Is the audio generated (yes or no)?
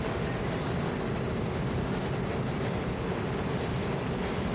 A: no